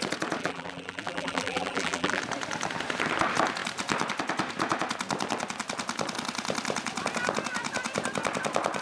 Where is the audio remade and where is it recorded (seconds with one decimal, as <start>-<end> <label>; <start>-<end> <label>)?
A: 0.0-0.4 recorded; 0.4-2.2 remade; 2.2-8.8 recorded